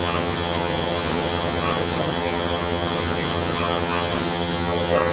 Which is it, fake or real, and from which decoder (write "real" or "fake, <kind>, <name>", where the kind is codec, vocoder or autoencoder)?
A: fake, vocoder, HiFi-GAN